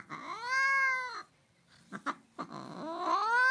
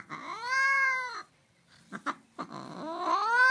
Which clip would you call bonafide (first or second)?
first